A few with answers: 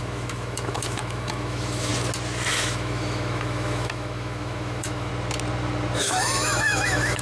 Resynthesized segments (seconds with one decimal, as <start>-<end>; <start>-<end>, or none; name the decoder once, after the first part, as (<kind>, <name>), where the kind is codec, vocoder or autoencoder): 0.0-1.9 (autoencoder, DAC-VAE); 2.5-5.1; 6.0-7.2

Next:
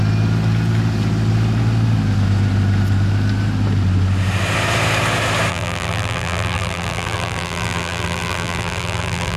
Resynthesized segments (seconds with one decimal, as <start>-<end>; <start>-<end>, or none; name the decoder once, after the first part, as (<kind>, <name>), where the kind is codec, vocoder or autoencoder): 5.5-9.4 (vocoder, BigVGAN v2)

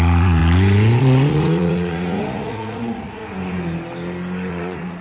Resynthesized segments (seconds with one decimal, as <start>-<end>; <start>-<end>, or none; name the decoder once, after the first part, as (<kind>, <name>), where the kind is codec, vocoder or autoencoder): 0.0-0.4 (vocoder, Vocos); 1.0-3.2; 4.5-5.0